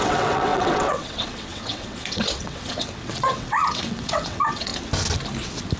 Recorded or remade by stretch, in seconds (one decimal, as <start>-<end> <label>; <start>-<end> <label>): 0.0-4.7 remade; 4.7-5.8 recorded